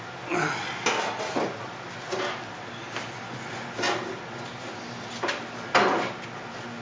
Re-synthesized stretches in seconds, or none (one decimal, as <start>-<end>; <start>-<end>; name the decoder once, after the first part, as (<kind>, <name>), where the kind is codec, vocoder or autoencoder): none